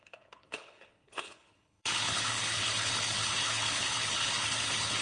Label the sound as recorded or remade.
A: remade